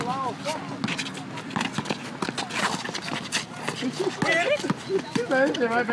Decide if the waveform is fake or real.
real